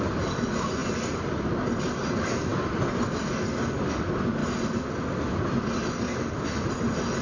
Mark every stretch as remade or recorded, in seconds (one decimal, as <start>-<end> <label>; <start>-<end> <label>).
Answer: 0.0-7.2 recorded